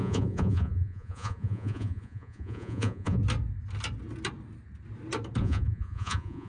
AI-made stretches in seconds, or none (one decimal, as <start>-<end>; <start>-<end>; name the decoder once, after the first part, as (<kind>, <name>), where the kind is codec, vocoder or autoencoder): 0.0-3.2 (vocoder, Vocos); 5.4-6.5